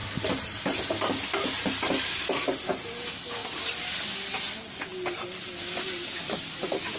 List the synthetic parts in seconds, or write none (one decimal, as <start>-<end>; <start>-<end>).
none